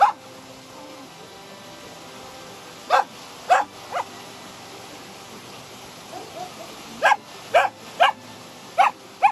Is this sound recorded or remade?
recorded